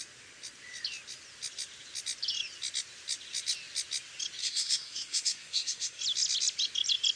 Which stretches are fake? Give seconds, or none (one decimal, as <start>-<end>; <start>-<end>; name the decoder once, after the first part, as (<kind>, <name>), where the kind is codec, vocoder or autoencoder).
4.4-6.0 (codec, SNAC)